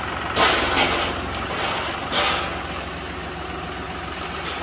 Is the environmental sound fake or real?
real